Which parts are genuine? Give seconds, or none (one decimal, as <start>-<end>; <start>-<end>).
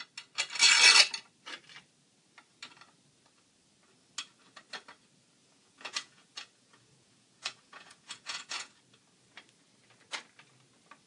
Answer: 0.0-5.4; 8.8-11.1